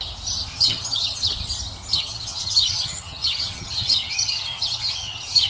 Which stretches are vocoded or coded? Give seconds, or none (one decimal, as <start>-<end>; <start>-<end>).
0.5-1.3; 1.9-5.5